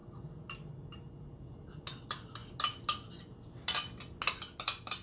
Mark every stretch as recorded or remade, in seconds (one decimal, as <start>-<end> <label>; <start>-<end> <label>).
0.0-5.0 recorded